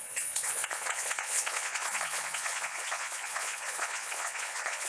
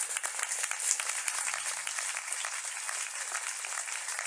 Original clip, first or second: second